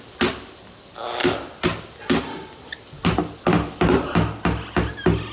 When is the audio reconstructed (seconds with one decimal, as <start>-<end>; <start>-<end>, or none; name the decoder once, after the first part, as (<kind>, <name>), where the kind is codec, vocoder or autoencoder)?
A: none